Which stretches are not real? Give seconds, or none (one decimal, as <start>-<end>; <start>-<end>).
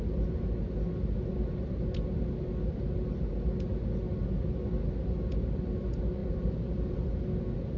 6.2-7.2